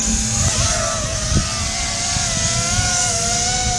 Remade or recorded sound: recorded